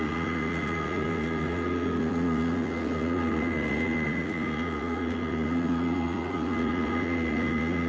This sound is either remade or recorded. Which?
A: remade